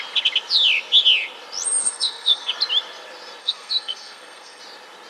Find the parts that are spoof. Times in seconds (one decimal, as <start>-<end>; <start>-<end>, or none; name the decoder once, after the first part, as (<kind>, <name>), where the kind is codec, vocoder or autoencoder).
1.8-2.5 (codec, SNAC); 3.4-4.6